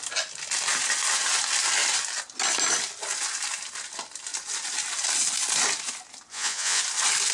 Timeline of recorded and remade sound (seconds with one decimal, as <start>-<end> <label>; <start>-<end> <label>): 0.0-6.3 recorded; 6.3-6.8 remade; 6.8-7.3 recorded